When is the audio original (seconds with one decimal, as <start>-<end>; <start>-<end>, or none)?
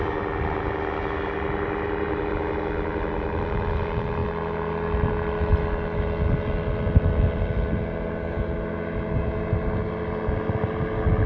0.0-11.3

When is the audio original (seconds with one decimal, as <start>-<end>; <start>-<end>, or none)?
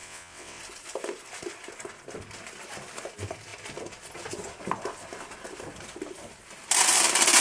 0.6-7.4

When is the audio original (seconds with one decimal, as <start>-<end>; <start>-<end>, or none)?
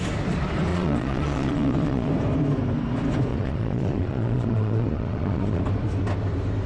0.0-0.7; 2.1-3.3; 5.6-6.7